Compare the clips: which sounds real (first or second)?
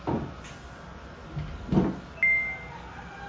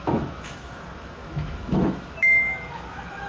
first